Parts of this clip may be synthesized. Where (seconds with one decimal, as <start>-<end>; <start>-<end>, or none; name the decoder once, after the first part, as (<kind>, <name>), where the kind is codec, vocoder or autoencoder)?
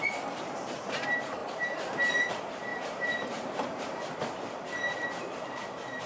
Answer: 2.7-4.1 (vocoder, BigVGAN v2)